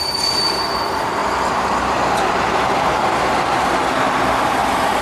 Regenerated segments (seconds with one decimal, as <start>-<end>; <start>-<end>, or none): 0.0-3.8